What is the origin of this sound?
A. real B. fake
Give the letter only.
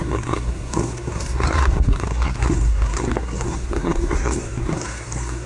B